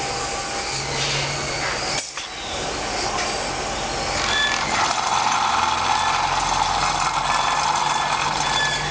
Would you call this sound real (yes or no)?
yes